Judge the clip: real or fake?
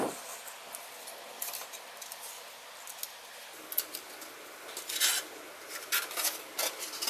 real